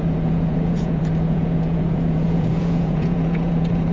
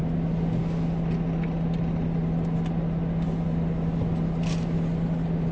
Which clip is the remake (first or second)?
first